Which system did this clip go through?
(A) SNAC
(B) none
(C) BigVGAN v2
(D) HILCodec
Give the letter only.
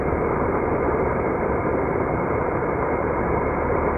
C